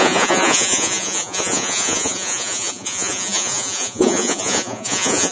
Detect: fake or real fake